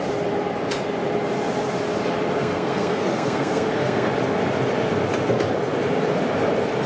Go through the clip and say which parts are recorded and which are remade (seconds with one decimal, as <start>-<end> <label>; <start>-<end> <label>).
0.0-2.4 recorded; 2.4-4.1 remade; 4.1-6.9 recorded